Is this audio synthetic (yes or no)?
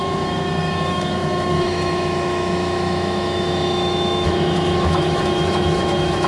yes